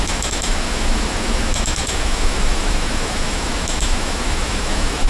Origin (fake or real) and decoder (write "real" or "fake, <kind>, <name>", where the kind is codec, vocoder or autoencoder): fake, autoencoder, DAC-VAE